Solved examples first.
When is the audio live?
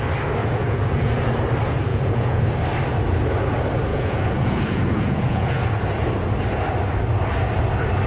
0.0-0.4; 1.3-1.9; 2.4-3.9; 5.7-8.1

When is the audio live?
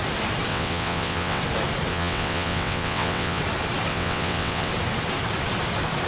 0.0-0.5; 1.4-1.9; 3.4-3.9; 4.7-6.1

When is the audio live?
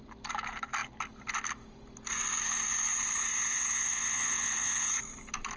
0.0-3.3; 5.0-5.6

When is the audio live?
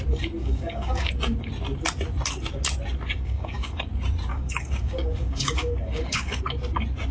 0.0-0.4; 1.1-3.1; 3.8-4.3; 6.6-7.1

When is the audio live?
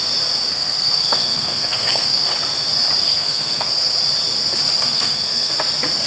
0.0-0.5; 2.3-3.1; 3.7-4.9; 5.5-6.1